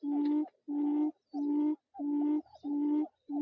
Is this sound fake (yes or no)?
no